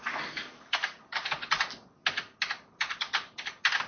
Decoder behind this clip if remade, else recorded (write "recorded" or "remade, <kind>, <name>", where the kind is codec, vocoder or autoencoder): recorded